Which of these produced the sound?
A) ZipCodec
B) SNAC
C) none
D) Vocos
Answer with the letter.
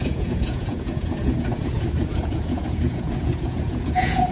D